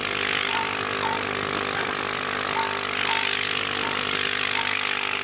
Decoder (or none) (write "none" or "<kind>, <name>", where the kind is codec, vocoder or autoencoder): none